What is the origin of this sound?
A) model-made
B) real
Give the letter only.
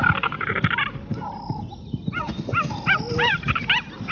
B